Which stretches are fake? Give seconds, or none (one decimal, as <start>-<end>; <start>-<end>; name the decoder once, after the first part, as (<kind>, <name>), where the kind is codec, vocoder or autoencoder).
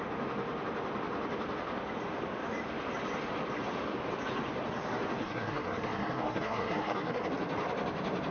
5.2-7.3 (codec, SNAC)